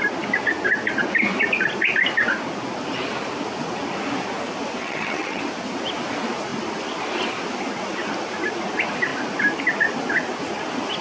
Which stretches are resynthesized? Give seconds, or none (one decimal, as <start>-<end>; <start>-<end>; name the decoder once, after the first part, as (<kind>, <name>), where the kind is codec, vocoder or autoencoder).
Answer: 4.8-5.4 (vocoder, HiFi-GAN)